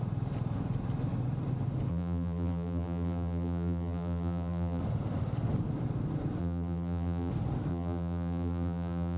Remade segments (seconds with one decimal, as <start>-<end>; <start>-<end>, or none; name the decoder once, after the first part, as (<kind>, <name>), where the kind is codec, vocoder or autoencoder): 1.9-4.8 (vocoder, BigVGAN v2); 6.4-7.3; 7.7-9.2